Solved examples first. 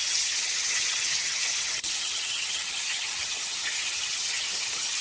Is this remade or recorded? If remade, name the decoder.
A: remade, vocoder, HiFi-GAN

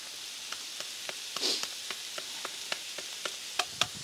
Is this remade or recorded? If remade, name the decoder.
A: recorded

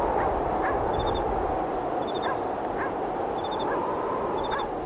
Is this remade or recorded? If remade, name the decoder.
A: recorded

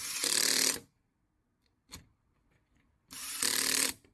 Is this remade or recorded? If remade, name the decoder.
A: remade, vocoder, BigVGAN v2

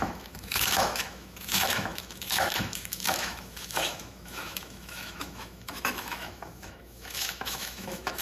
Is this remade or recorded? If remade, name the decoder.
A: remade, autoencoder, DAC-VAE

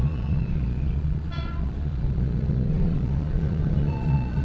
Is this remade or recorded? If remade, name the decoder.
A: remade, vocoder, Vocos